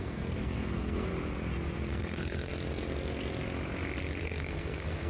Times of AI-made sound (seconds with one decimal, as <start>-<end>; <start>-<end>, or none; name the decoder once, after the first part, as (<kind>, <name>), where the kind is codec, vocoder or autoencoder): 0.0-1.1 (codec, SNAC); 1.9-2.5; 4.2-5.1